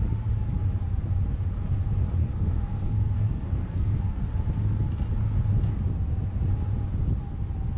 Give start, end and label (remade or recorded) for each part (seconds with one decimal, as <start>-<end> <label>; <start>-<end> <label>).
0.0-2.2 recorded; 2.2-4.2 remade; 4.2-7.8 recorded